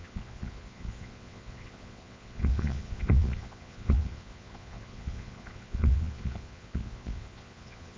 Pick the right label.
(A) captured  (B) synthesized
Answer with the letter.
B